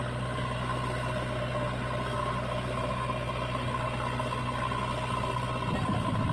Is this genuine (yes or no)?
yes